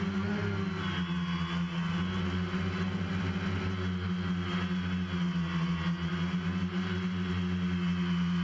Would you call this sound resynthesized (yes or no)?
no